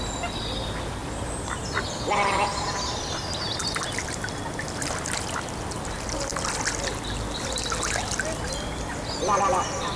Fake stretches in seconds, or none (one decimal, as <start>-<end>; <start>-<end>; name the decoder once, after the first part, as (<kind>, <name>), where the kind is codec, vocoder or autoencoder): 1.0-1.6 (vocoder, BigVGAN v2); 3.6-4.2